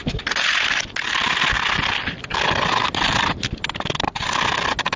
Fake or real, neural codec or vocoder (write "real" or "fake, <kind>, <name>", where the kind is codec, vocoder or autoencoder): real